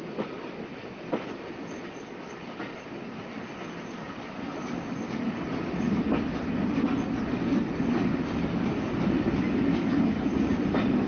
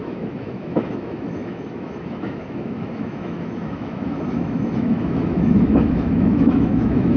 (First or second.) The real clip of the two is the first